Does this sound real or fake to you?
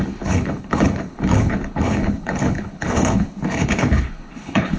fake